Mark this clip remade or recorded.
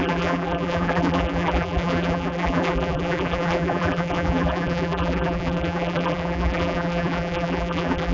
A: remade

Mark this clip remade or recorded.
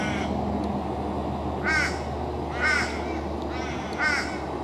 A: recorded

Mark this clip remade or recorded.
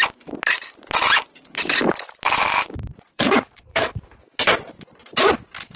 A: remade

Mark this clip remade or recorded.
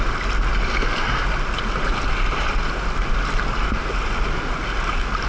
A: recorded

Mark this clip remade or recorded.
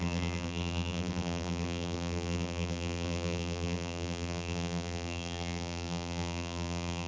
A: remade